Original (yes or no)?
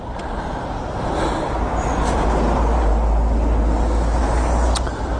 yes